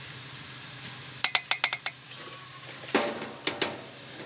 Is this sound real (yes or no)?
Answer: yes